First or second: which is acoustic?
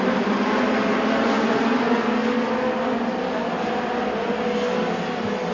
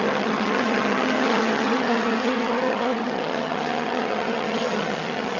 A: first